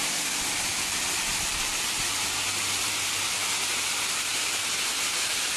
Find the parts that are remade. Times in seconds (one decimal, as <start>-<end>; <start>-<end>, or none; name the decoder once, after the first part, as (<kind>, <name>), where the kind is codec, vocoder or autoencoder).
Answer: 0.0-5.6 (vocoder, BigVGAN v2)